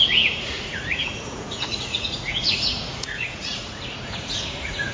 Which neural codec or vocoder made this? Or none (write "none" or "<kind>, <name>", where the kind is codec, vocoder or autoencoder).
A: vocoder, Vocos